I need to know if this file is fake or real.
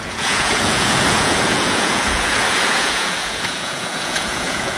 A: fake